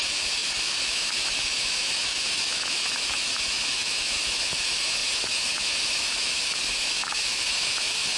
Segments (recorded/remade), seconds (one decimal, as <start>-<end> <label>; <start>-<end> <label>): 0.0-8.2 remade